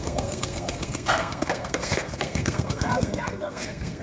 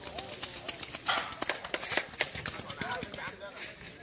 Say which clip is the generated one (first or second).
first